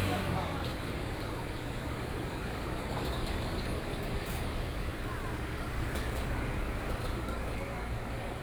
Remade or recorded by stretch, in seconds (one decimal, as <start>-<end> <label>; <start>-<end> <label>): 0.0-8.4 remade